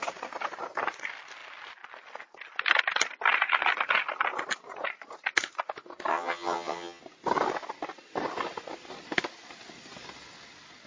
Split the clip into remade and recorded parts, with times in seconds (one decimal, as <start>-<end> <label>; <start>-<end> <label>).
0.0-6.1 recorded; 6.1-7.0 remade; 7.0-10.9 recorded